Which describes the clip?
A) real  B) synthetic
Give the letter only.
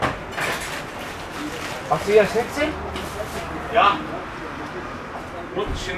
A